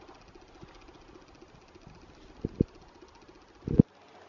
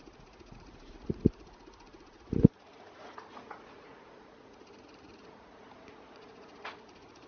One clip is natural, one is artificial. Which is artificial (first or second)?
second